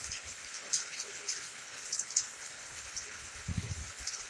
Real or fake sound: fake